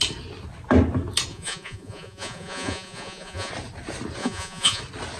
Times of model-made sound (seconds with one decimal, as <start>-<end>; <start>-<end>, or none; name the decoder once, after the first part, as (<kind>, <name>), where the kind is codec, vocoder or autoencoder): 1.3-3.5 (vocoder, Vocos); 4.2-4.8